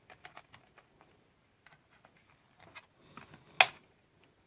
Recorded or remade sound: recorded